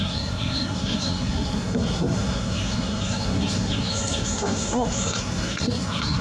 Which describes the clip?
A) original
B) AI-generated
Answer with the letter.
B